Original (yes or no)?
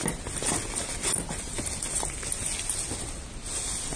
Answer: yes